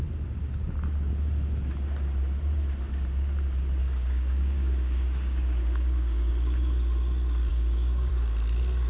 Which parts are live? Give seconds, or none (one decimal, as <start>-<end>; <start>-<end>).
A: 0.0-3.8; 6.3-7.5; 8.1-8.9